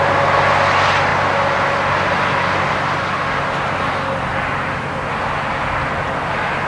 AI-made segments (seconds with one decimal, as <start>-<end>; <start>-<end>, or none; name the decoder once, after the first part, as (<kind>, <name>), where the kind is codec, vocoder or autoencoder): none